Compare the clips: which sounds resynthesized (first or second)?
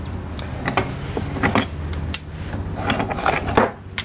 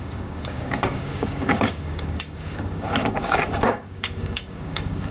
second